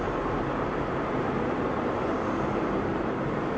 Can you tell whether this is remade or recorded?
remade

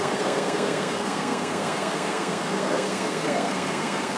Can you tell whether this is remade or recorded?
remade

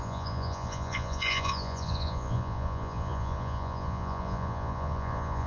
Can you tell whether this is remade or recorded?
remade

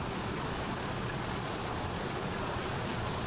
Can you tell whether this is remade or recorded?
remade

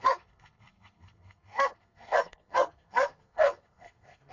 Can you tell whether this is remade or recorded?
remade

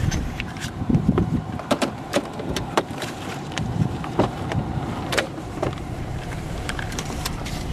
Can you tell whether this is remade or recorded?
remade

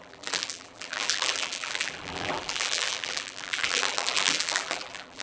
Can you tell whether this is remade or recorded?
remade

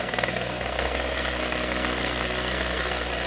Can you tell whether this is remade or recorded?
remade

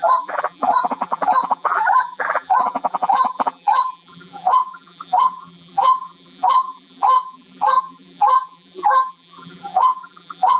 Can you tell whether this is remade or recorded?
remade